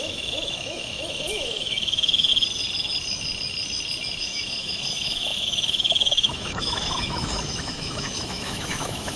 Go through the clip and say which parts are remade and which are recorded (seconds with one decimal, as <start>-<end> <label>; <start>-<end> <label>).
0.0-2.3 remade; 2.3-4.2 recorded; 4.2-9.2 remade